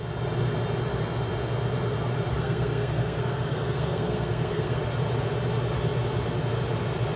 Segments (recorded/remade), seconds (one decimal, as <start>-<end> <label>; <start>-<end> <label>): 0.0-2.3 recorded; 2.3-4.8 remade; 4.8-7.2 recorded